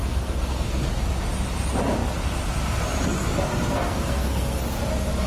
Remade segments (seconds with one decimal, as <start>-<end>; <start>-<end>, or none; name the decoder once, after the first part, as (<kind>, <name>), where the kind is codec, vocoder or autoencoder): 0.0-0.8 (codec, SNAC); 3.5-4.6